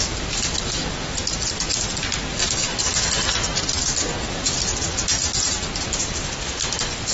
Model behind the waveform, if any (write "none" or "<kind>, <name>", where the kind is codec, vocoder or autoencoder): none